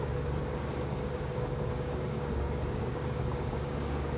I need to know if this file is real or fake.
fake